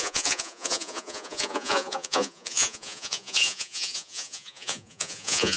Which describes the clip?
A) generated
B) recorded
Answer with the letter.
A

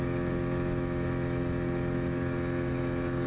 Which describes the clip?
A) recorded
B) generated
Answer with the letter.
A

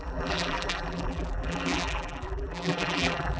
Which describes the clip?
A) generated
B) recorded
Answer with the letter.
A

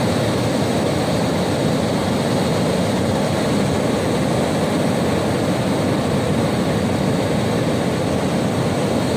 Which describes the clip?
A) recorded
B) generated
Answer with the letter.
A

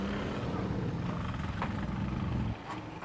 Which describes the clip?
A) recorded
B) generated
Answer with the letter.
A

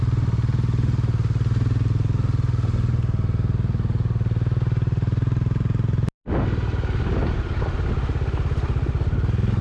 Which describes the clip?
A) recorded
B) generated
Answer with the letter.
A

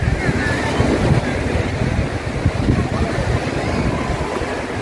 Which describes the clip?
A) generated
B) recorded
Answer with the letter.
B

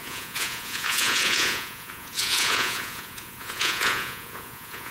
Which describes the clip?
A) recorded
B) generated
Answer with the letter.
B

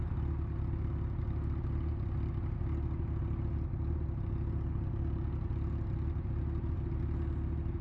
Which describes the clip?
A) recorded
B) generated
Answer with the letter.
A